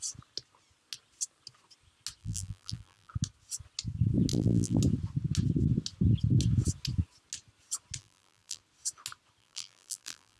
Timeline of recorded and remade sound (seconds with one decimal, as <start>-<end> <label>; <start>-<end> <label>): 0.0-2.2 recorded; 2.2-3.1 remade; 3.1-4.3 recorded; 4.3-4.8 remade; 4.8-8.0 recorded; 8.0-8.6 remade; 8.6-9.4 recorded; 9.4-10.4 remade